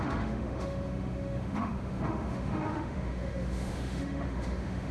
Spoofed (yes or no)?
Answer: yes